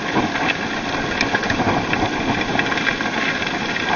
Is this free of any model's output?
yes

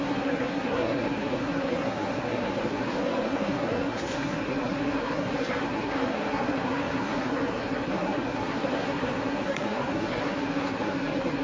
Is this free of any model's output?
no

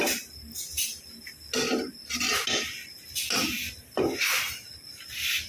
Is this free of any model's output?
yes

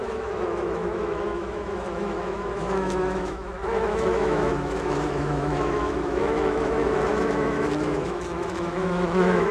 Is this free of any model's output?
no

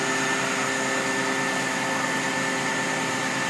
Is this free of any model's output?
yes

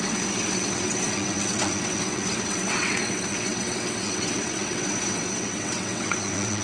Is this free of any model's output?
no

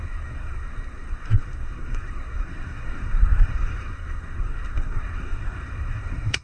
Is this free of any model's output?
no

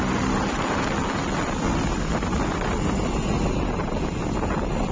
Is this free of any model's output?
yes